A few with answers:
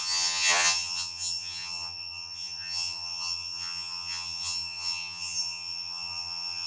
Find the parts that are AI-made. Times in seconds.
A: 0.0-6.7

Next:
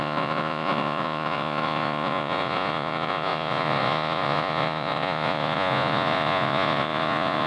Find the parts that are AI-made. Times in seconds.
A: 0.0-7.5

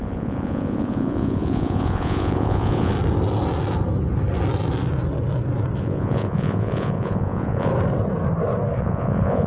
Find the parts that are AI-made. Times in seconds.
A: 0.0-2.9; 5.8-7.7; 8.8-9.5

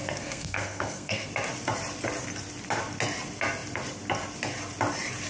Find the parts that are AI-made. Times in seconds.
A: 0.0-1.3

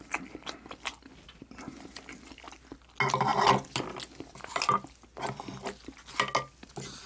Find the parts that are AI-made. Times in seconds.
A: none

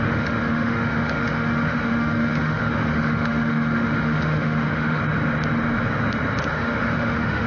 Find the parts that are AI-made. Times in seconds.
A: 0.0-5.0; 6.4-7.5

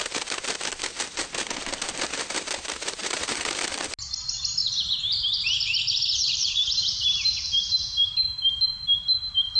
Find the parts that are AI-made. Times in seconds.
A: 3.0-3.5; 4.6-8.6